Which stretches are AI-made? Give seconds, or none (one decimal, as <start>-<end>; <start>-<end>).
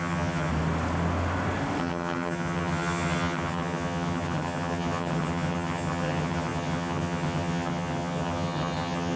0.0-0.5; 1.8-9.2